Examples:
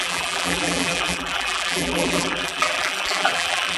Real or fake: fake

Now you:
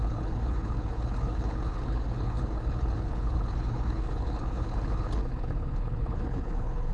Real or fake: fake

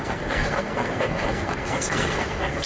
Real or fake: fake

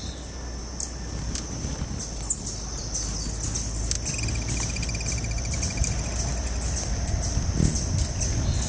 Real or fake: real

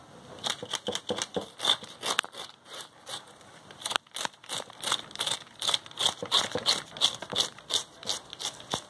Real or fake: real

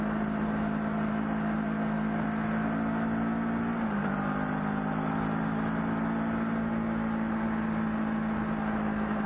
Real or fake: real